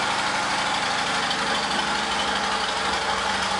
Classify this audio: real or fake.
real